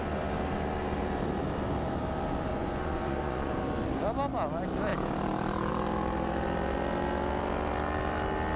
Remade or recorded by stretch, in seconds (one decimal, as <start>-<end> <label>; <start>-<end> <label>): 0.0-2.5 recorded; 2.5-3.6 remade; 3.6-8.6 recorded

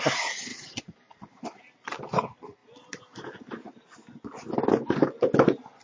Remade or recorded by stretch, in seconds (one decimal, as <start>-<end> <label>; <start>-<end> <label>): 0.0-0.5 recorded; 0.5-2.0 remade; 2.0-5.8 recorded

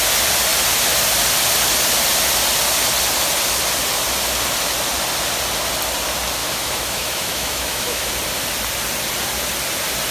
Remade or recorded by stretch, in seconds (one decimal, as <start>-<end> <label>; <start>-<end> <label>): 0.0-6.4 recorded; 6.4-8.1 remade; 8.1-10.1 recorded